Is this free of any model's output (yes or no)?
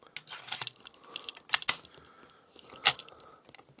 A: yes